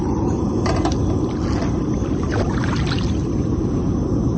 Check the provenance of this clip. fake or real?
real